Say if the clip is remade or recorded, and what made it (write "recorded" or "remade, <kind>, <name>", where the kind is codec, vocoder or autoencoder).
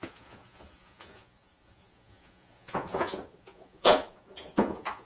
remade, vocoder, Vocos